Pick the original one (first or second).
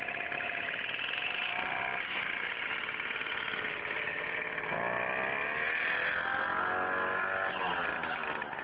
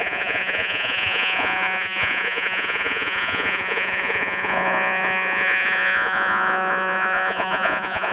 first